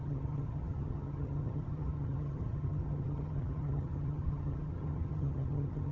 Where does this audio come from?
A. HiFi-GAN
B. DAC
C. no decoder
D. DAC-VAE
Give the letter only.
A